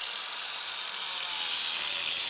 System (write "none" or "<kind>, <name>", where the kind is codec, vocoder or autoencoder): none